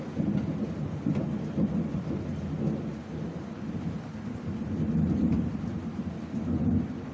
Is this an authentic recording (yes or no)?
yes